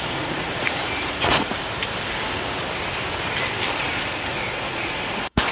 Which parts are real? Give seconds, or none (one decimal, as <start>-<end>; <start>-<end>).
1.5-3.8